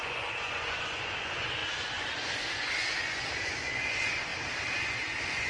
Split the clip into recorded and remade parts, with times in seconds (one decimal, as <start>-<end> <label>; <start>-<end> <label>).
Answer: 0.0-4.3 remade; 4.3-4.8 recorded; 4.8-5.5 remade